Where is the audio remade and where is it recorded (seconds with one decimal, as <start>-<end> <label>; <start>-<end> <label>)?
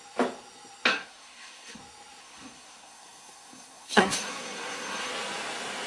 0.0-0.9 recorded; 0.9-1.8 remade; 1.8-2.2 recorded; 2.2-5.1 remade; 5.1-5.9 recorded